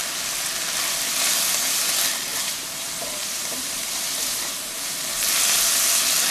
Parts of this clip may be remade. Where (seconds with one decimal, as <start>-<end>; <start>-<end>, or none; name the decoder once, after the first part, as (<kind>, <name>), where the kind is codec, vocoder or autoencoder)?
2.3-5.1 (vocoder, BigVGAN v2)